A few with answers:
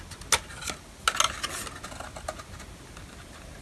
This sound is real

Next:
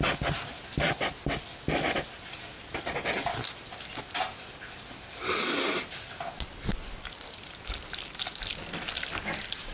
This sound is real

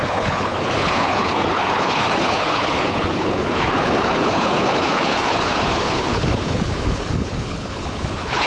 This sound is fake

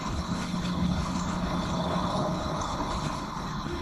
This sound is fake